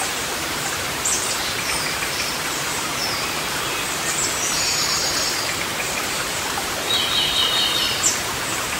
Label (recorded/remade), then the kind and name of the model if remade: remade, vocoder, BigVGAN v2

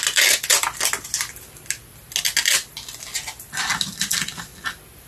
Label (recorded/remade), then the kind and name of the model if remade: recorded